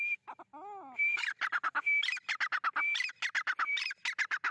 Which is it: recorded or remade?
recorded